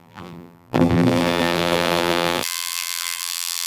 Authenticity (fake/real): fake